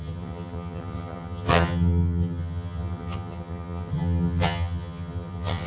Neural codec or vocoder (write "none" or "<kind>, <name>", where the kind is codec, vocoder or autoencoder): vocoder, HiFi-GAN